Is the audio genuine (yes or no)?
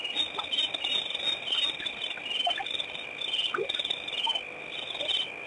yes